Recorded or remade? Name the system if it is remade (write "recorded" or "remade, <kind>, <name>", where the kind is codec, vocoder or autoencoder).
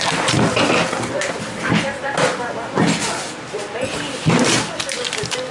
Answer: recorded